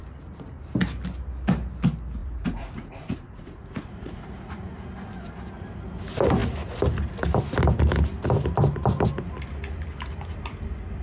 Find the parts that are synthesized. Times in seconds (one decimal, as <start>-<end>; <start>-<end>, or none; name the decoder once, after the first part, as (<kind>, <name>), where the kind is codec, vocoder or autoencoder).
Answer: 2.2-4.7 (vocoder, Vocos)